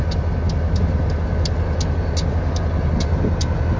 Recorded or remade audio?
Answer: recorded